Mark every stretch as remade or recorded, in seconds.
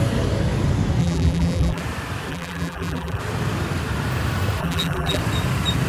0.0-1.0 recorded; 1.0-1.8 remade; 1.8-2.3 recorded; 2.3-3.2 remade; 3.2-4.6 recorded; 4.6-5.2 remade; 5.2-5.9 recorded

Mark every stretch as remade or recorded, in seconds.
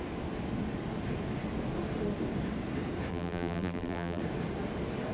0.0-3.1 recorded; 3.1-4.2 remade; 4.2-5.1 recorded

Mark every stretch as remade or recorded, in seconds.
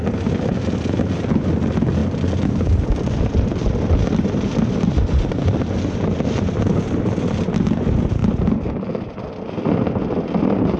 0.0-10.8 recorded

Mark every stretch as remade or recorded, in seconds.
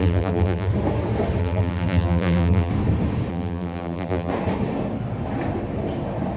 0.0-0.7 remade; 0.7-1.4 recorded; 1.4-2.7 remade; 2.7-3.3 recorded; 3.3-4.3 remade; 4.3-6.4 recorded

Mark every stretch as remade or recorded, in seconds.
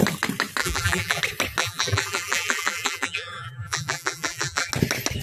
0.0-0.6 recorded; 0.6-1.2 remade; 1.2-1.6 recorded; 1.6-4.7 remade; 4.7-5.2 recorded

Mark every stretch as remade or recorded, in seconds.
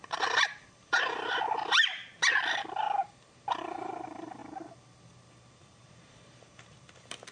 0.0-2.0 remade; 2.0-2.6 recorded; 2.6-4.4 remade; 4.4-5.6 recorded; 5.6-7.3 remade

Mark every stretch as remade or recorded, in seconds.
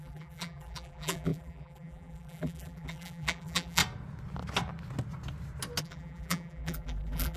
0.0-3.8 remade; 3.8-5.8 recorded; 5.8-7.4 remade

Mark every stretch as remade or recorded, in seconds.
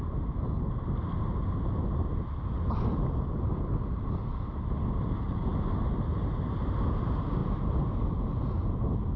0.0-9.2 recorded